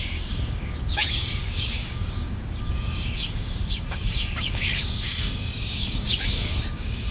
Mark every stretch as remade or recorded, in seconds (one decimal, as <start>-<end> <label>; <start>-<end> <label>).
0.0-7.1 remade